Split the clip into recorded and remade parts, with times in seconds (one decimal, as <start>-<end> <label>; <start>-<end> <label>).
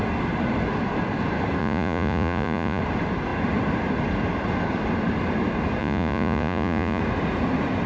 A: 0.0-1.6 recorded; 1.6-2.8 remade; 2.8-5.8 recorded; 5.8-7.0 remade; 7.0-7.9 recorded